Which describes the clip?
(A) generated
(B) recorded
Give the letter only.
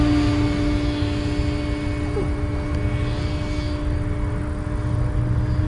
B